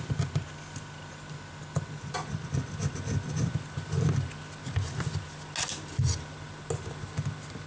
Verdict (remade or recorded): recorded